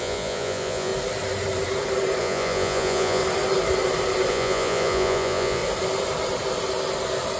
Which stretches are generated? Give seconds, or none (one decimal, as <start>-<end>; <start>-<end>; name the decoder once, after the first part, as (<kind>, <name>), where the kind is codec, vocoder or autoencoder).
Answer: 0.0-0.9 (vocoder, Vocos); 2.2-3.2; 4.3-5.6